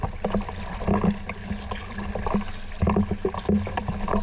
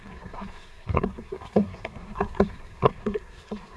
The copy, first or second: second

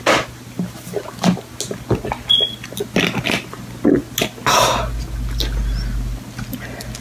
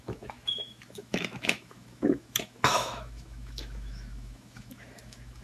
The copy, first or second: second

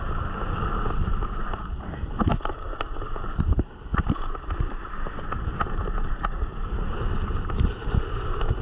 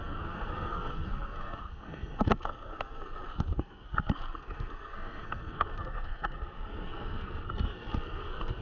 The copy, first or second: second